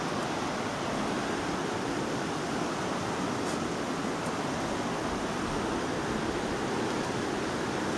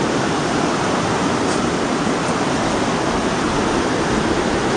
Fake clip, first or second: second